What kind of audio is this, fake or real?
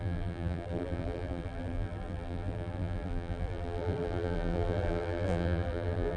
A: fake